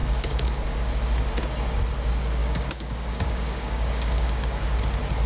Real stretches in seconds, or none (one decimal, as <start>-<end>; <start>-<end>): 0.8-2.4; 4.8-5.3